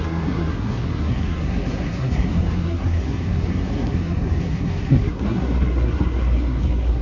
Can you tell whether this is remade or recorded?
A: remade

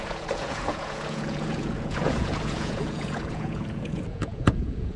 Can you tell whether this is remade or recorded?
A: remade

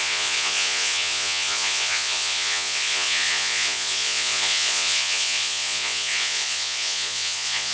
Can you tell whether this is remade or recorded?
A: remade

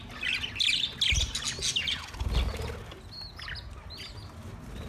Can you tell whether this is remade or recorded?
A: recorded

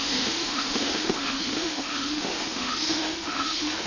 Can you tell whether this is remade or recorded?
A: remade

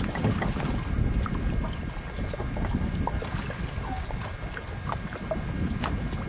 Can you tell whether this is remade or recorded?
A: recorded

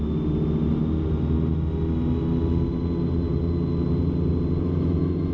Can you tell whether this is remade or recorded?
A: recorded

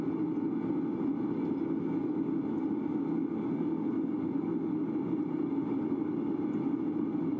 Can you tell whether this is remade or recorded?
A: recorded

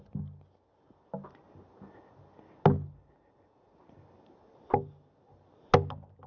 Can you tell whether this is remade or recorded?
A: recorded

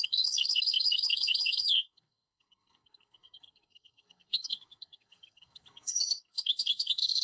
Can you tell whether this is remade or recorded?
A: remade